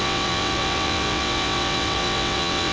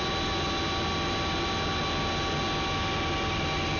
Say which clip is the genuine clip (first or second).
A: second